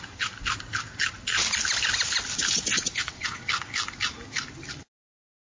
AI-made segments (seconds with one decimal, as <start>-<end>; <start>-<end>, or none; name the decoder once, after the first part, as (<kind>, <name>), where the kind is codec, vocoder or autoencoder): 2.7-3.5 (vocoder, WaveNeXt)